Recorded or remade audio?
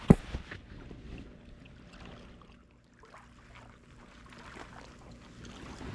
recorded